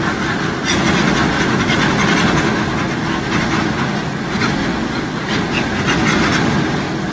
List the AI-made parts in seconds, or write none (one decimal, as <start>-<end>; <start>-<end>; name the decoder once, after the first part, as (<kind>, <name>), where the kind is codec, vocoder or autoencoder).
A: none